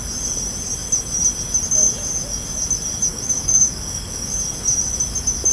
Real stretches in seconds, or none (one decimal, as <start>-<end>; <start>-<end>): 0.0-3.1; 4.3-5.5